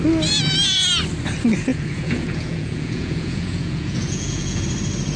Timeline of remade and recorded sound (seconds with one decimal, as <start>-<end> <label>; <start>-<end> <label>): 0.0-1.7 recorded; 1.7-4.6 remade; 4.6-5.2 recorded